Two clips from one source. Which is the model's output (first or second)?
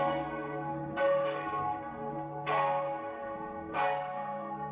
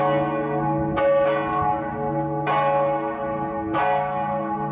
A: first